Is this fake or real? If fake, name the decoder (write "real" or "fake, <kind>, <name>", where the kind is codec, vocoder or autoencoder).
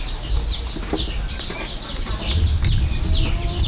real